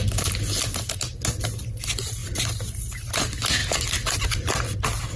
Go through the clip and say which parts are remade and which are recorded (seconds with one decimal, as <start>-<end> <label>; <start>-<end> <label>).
0.0-5.2 recorded